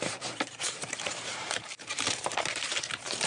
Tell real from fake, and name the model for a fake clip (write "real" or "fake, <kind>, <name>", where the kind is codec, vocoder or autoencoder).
fake, vocoder, BigVGAN v2